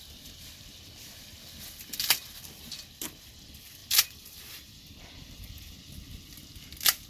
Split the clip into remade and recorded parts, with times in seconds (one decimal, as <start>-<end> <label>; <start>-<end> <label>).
0.0-3.8 recorded; 3.8-5.8 remade; 5.8-7.1 recorded